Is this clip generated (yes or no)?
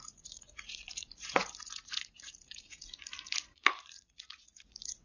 yes